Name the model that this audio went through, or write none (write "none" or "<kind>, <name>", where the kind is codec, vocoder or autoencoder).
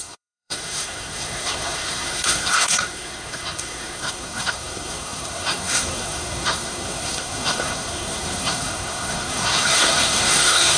codec, SNAC